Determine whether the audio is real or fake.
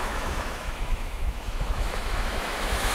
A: fake